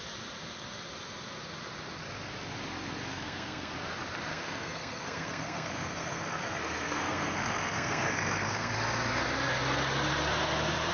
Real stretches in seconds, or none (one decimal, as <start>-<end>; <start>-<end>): 0.0-3.1; 3.7-4.3; 8.7-10.9